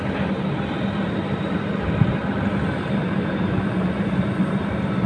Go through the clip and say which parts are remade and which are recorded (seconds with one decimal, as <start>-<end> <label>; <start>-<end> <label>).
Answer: 0.0-5.1 recorded